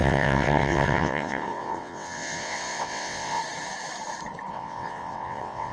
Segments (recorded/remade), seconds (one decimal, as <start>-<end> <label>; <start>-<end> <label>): 0.0-3.4 remade; 3.4-4.5 recorded; 4.5-5.7 remade